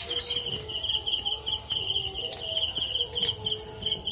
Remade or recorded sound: recorded